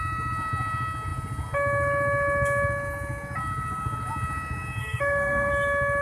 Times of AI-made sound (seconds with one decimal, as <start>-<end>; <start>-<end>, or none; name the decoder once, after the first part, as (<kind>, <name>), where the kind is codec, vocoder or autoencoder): 4.8-5.5 (codec, SNAC)